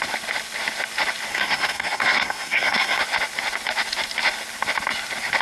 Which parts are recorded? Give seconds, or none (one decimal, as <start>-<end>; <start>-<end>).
0.0-1.3; 3.0-5.4